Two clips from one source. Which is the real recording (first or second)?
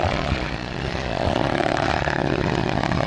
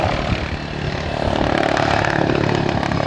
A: second